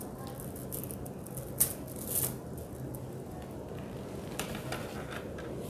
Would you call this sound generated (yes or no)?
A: no